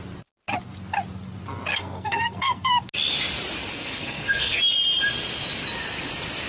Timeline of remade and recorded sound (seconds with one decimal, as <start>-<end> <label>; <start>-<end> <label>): 0.0-1.7 recorded; 1.7-2.7 remade; 2.7-3.7 recorded; 3.7-4.6 remade; 4.6-6.5 recorded